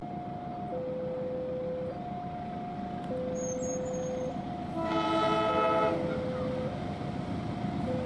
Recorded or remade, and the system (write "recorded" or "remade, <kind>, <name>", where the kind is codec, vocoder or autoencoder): recorded